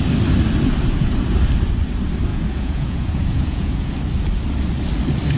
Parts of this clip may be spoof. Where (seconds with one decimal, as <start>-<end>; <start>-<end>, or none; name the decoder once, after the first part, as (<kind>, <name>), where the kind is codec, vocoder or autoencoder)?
2.3-3.9 (vocoder, Vocos)